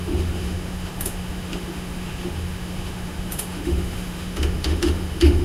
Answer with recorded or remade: remade